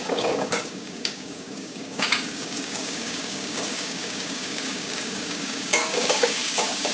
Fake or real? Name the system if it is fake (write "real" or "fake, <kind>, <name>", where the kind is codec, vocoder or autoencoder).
fake, codec, DAC